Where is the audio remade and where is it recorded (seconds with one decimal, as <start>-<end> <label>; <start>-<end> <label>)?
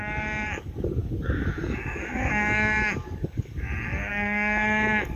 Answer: 0.0-5.2 remade